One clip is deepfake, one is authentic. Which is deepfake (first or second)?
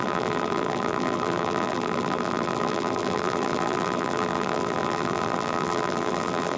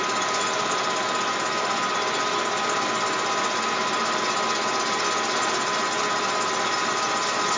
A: first